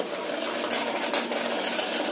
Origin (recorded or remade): recorded